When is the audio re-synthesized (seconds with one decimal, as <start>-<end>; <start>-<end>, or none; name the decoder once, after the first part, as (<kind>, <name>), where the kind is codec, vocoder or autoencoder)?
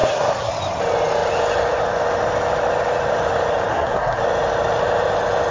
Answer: 0.0-0.5 (codec, SNAC); 3.7-4.2